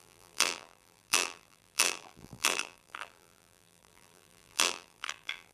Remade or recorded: remade